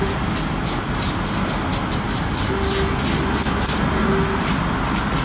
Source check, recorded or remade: recorded